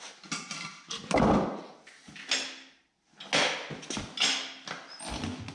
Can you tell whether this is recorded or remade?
recorded